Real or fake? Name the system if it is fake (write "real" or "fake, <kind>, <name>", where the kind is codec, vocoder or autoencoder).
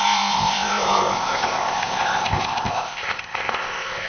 fake, codec, ZipCodec